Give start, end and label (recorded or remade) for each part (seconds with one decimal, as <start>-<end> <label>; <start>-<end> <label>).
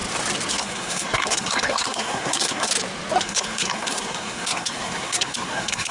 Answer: 0.0-0.5 recorded; 0.5-2.7 remade; 2.7-3.2 recorded; 3.2-5.9 remade